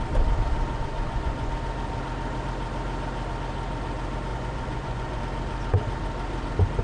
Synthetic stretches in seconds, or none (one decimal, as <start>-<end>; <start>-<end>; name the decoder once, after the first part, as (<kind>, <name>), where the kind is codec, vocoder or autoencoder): 0.7-1.5 (vocoder, Vocos); 4.3-5.2